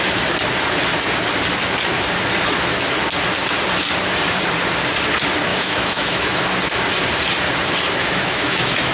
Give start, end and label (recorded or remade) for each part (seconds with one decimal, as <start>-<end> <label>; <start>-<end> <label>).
0.0-5.5 recorded; 5.5-6.4 remade; 6.4-8.0 recorded; 8.0-8.9 remade